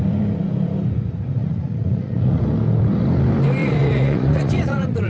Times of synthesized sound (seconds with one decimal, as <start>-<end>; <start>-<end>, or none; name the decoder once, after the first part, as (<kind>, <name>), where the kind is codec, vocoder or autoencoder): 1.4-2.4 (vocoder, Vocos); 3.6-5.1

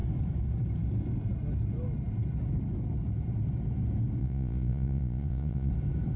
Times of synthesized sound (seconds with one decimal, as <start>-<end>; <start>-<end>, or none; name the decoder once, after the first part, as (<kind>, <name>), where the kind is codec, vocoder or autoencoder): 4.2-5.7 (vocoder, Vocos)

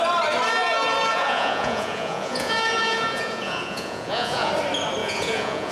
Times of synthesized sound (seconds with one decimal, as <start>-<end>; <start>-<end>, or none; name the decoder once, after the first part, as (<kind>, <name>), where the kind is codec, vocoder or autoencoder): 1.1-4.5 (vocoder, Vocos); 5.0-5.7

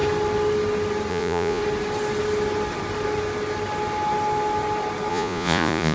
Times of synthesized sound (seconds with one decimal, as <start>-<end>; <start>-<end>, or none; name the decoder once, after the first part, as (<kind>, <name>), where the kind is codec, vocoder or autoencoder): 1.1-1.6 (vocoder, Vocos); 5.1-5.9

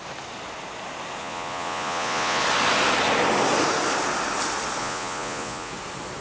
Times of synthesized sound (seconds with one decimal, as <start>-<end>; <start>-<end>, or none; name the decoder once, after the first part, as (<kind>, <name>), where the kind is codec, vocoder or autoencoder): 1.2-2.4 (vocoder, Vocos); 4.8-5.7

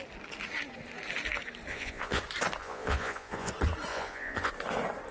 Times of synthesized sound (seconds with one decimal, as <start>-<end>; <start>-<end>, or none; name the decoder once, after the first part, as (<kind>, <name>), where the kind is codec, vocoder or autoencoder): 1.7-2.2 (vocoder, Vocos); 2.6-3.5; 3.9-4.5

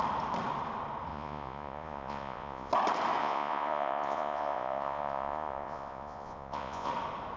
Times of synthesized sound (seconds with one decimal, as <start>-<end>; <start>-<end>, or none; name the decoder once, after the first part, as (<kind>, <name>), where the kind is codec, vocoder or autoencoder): 1.1-2.7 (vocoder, Vocos); 3.2-6.9